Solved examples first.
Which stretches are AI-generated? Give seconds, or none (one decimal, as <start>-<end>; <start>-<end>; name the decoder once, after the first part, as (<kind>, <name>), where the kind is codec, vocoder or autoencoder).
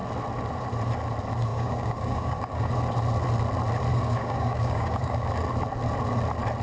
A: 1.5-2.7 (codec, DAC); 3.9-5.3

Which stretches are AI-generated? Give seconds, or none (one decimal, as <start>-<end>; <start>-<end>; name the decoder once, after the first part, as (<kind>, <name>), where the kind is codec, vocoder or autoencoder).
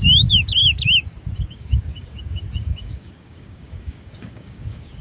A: 0.0-0.6 (codec, DAC); 1.4-5.0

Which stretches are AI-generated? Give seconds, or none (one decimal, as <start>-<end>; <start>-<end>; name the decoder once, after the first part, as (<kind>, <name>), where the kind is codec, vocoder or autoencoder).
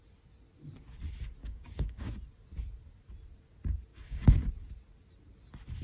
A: 1.4-2.1 (codec, DAC); 3.9-4.5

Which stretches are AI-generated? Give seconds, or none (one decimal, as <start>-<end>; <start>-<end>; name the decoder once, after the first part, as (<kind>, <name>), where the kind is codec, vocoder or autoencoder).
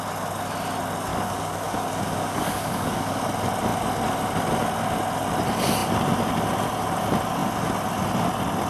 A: 1.1-3.2 (codec, DAC)